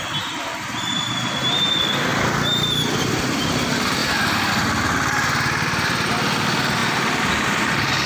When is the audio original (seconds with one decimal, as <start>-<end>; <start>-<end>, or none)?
0.0-2.1; 3.1-4.0; 4.5-8.1